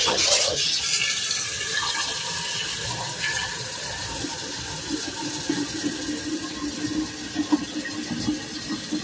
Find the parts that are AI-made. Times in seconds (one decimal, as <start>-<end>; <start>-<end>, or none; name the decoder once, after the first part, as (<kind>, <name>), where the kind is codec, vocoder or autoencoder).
0.0-0.8 (vocoder, HiFi-GAN)